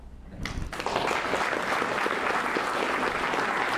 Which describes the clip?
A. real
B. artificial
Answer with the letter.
A